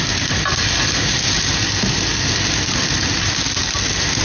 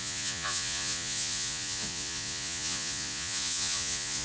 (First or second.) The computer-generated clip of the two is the second